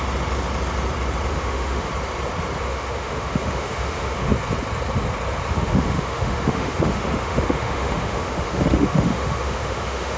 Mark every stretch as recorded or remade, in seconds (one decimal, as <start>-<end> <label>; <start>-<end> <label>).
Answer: 0.0-1.3 recorded; 1.3-1.9 remade; 1.9-2.6 recorded; 2.6-4.3 remade; 4.3-5.5 recorded; 5.5-10.2 remade